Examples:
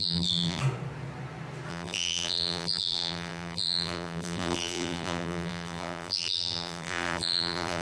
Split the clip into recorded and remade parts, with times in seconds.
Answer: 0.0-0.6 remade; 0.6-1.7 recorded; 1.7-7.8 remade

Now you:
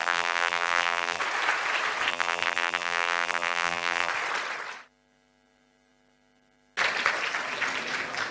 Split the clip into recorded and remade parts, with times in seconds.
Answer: 0.0-1.2 remade; 1.2-2.1 recorded; 2.1-4.1 remade; 4.1-8.3 recorded

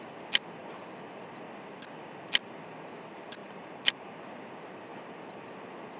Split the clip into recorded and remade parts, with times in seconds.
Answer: 0.0-0.6 recorded; 0.6-1.2 remade; 1.2-3.4 recorded; 3.4-4.2 remade; 4.2-4.9 recorded; 4.9-5.4 remade; 5.4-6.0 recorded

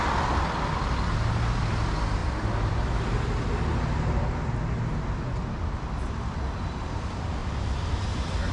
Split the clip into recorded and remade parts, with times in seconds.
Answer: 0.0-7.4 recorded; 7.4-8.0 remade; 8.0-8.5 recorded

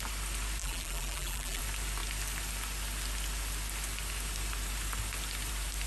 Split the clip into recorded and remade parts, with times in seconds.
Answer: 0.0-0.6 recorded; 0.6-1.6 remade; 1.6-5.9 recorded